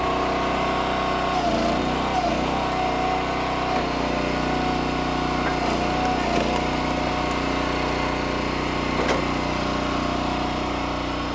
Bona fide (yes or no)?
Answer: yes